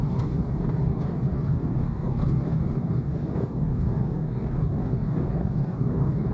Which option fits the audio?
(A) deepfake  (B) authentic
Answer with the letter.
A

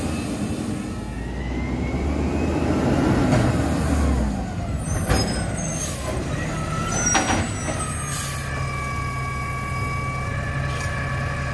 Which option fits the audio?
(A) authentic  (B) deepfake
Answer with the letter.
A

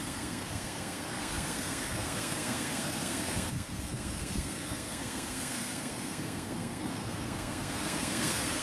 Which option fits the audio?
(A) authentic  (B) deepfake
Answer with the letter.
B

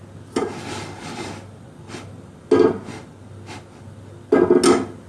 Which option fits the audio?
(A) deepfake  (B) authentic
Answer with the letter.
B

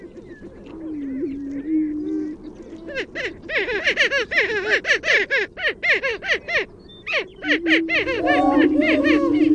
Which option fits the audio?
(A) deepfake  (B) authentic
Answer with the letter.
B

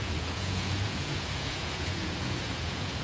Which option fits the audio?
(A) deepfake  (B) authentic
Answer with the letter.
A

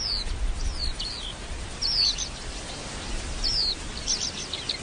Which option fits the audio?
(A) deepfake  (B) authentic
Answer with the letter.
B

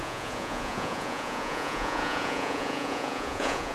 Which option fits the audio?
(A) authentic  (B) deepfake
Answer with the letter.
B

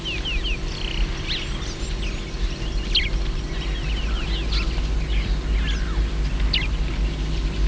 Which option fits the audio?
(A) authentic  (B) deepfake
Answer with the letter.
A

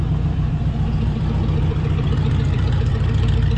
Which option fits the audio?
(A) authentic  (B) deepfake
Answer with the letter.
B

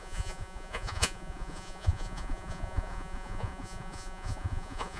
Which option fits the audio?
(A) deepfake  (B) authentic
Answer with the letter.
A